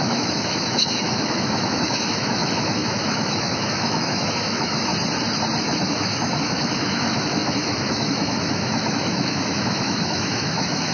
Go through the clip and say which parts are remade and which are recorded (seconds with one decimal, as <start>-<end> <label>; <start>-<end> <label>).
0.0-4.9 remade; 4.9-5.6 recorded; 5.6-10.9 remade